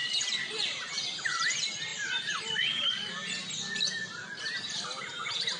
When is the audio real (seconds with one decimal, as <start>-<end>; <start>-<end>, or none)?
0.0-1.9; 2.4-5.6